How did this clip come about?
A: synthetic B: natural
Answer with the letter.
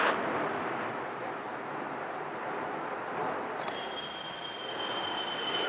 B